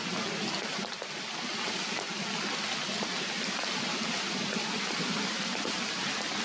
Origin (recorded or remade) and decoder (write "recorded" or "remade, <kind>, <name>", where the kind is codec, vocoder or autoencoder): recorded